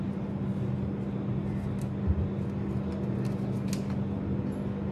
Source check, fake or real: real